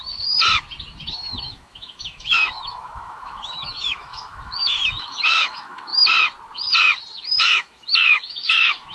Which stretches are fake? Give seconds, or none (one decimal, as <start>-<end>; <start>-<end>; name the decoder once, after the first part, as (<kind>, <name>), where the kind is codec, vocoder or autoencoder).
1.3-5.9 (autoencoder, DAC-VAE); 7.4-8.9